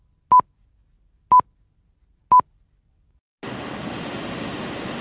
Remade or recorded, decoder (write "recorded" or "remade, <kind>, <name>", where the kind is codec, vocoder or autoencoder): recorded